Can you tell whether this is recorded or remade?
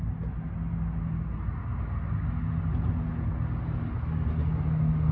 recorded